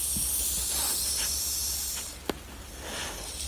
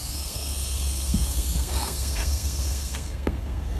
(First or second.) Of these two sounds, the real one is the first